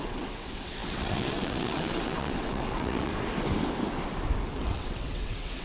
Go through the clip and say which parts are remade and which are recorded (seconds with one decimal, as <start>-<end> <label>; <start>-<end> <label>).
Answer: 0.0-3.1 remade; 3.1-4.5 recorded; 4.5-5.6 remade